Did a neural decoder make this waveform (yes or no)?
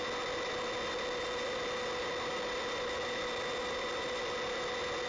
no